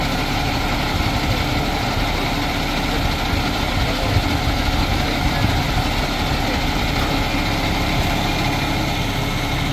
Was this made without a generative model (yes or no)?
yes